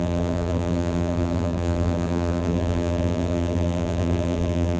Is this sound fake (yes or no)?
yes